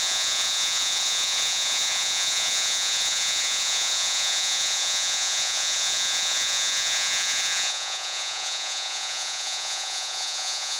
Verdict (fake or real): fake